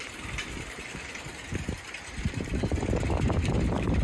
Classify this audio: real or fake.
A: fake